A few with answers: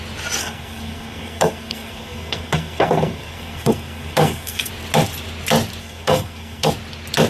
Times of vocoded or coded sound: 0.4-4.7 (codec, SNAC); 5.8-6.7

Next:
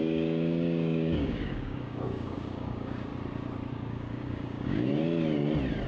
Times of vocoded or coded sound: 0.0-3.1 (codec, DAC); 3.7-4.9

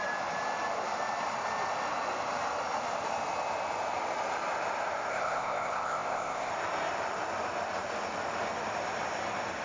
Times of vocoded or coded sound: 5.1-6.5 (codec, ZipCodec)

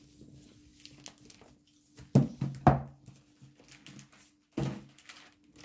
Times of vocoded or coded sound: none

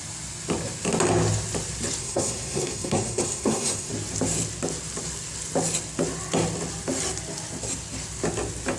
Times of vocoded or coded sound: 2.0-3.9 (codec, SNAC)

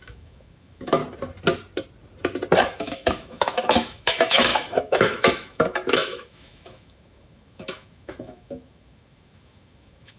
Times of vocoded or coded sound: 0.0-1.0 (autoencoder, DAC-VAE); 2.6-10.2